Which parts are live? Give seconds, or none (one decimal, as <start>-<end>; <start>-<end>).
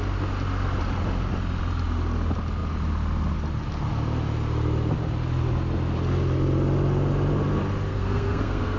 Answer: 0.0-7.9